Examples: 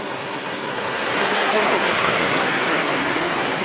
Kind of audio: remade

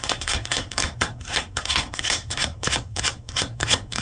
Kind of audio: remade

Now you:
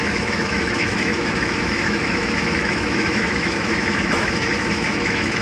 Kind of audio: remade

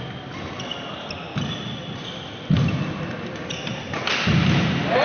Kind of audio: recorded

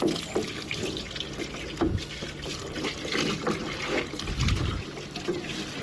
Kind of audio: recorded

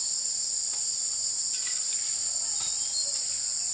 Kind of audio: recorded